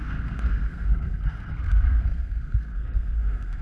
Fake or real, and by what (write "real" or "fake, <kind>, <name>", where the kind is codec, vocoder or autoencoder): fake, codec, SNAC